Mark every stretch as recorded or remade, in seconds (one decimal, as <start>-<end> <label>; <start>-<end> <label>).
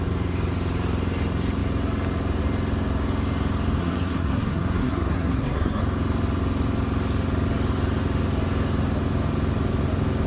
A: 0.0-3.8 recorded; 3.8-5.8 remade; 5.8-10.3 recorded